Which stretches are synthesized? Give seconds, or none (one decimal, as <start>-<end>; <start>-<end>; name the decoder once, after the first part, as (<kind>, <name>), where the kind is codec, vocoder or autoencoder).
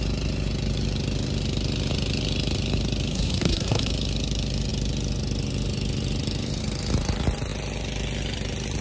3.1-3.9 (codec, SNAC)